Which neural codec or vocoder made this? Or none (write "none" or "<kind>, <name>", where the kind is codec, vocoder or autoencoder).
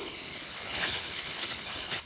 codec, HILCodec